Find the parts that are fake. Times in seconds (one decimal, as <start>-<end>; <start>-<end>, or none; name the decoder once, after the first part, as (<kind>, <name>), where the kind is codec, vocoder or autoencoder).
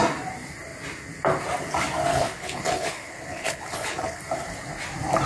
2.1-4.2 (codec, HILCodec)